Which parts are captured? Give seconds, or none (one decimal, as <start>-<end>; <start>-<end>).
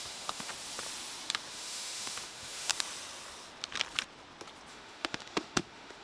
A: 0.5-1.5; 2.7-4.7